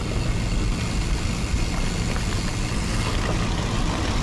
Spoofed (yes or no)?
no